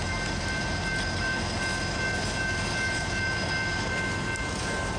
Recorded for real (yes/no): yes